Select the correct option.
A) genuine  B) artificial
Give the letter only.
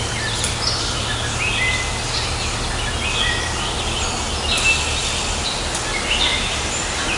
A